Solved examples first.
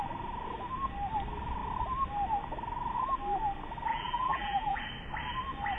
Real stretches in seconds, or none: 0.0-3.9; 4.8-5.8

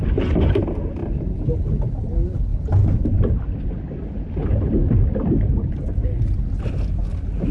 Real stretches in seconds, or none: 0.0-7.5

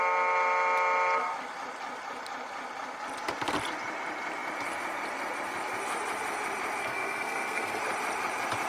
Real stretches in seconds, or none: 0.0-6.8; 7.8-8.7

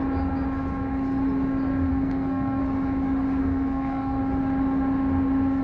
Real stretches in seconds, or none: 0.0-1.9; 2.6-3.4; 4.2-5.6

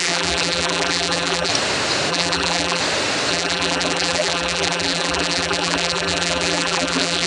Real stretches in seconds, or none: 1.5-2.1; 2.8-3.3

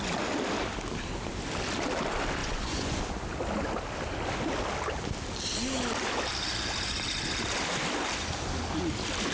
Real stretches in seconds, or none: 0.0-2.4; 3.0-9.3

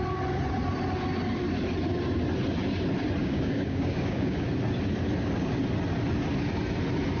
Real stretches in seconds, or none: 0.0-3.2; 4.5-7.2

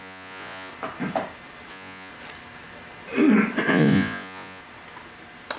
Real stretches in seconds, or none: 0.7-1.7; 2.1-3.7; 4.6-5.6